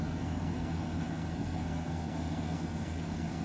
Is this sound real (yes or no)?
no